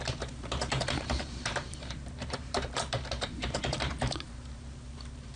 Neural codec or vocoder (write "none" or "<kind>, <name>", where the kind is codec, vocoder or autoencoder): vocoder, BigVGAN v2